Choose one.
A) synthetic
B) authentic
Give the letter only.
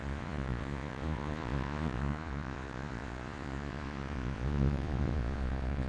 A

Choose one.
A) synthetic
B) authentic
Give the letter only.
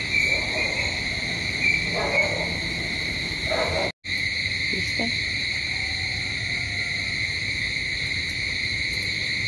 B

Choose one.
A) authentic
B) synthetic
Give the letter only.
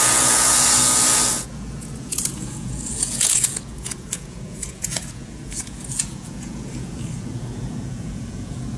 B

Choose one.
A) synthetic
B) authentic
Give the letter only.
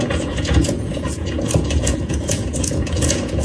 A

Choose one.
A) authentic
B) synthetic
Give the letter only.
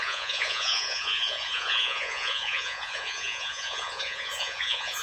B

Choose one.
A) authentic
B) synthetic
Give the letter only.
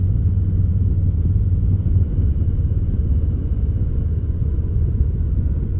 B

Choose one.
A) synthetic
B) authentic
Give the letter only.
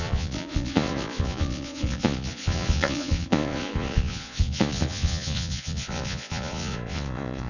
A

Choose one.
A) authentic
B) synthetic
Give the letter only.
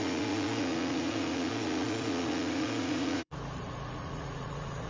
B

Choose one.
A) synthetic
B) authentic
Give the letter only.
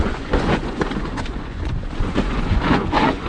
A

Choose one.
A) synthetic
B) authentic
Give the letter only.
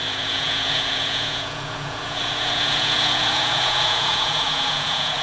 A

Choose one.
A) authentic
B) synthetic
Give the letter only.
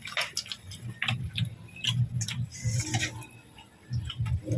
A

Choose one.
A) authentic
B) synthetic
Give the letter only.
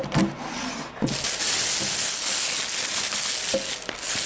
A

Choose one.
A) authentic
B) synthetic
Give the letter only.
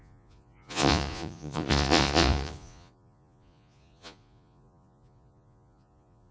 B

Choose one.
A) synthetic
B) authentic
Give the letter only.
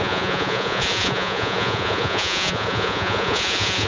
A